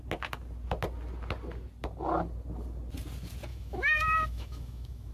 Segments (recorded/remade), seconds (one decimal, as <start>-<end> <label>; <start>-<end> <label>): 0.0-3.5 recorded; 3.5-5.1 remade